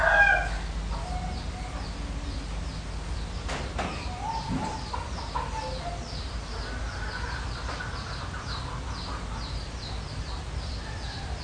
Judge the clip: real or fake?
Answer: real